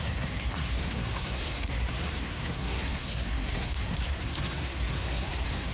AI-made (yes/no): yes